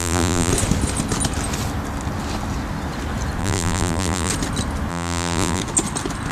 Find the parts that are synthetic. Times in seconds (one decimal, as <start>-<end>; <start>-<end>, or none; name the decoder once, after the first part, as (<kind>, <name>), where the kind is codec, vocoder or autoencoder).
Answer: 0.0-0.5 (vocoder, BigVGAN v2); 3.4-4.3; 4.9-5.6